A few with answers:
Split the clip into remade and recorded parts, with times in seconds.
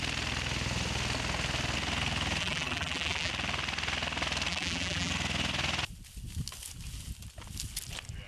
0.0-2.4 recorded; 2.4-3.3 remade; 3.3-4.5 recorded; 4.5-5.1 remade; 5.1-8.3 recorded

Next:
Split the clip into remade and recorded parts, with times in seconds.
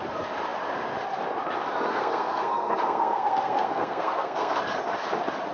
0.0-1.9 recorded; 1.9-4.6 remade; 4.6-5.5 recorded